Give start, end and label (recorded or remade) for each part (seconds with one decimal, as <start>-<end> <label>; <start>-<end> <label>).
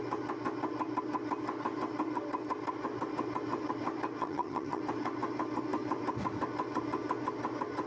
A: 0.0-4.2 recorded; 4.2-4.8 remade; 4.8-7.9 recorded